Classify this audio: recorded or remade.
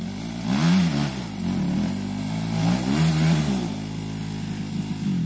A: recorded